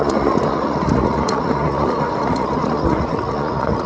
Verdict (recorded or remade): remade